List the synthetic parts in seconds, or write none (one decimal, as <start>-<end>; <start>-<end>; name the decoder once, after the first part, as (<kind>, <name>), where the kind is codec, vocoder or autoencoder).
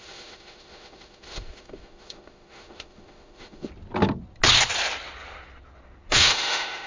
0.0-3.7 (autoencoder, DAC-VAE); 6.1-6.9